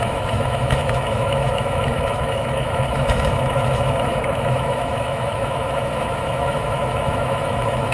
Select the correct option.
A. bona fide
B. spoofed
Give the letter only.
B